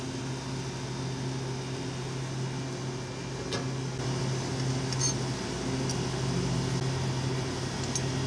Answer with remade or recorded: recorded